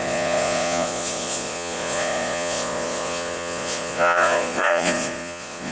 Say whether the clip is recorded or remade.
remade